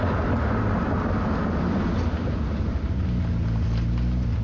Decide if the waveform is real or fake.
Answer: real